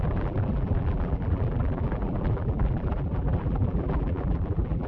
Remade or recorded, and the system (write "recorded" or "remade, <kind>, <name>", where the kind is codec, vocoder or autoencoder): remade, vocoder, BigVGAN v2